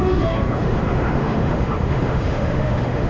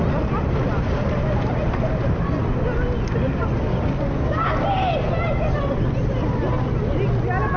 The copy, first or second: first